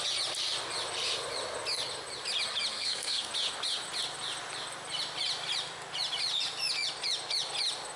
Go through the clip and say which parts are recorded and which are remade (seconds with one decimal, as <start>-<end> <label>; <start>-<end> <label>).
0.0-2.7 recorded; 2.7-3.3 remade; 3.3-8.0 recorded